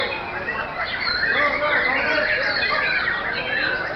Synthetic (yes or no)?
no